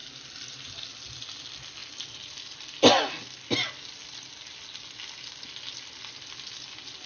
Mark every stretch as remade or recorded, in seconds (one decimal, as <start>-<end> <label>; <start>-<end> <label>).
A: 0.0-7.1 recorded